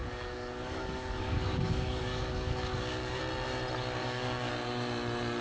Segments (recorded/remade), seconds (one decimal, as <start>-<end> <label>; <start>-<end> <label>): 0.0-3.2 remade; 3.2-4.0 recorded; 4.0-4.5 remade; 4.5-5.4 recorded